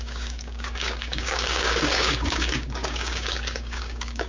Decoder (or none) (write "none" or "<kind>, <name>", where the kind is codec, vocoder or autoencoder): codec, DAC